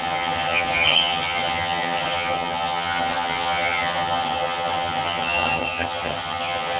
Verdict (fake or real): fake